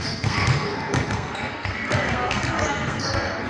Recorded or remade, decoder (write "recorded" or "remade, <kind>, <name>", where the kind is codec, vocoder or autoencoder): remade, codec, SNAC